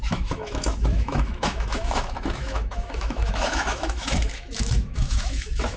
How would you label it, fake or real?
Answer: fake